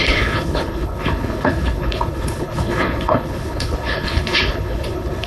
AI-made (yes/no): yes